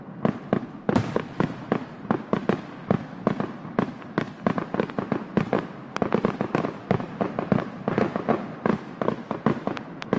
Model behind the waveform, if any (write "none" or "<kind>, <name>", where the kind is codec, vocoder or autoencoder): none